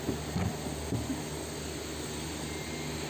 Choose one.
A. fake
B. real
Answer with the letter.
B